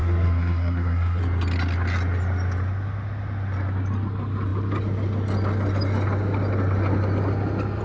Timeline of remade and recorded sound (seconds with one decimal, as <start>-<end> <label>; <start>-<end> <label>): 0.0-1.2 remade; 1.2-7.8 recorded